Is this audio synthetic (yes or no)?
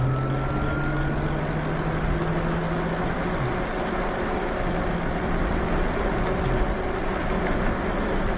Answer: no